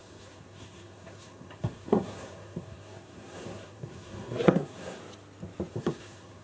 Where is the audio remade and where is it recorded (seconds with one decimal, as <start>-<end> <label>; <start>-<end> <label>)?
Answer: 0.0-5.0 remade; 5.0-5.7 recorded; 5.7-6.4 remade